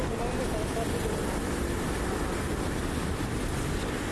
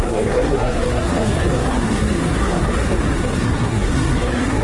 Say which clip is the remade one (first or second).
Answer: second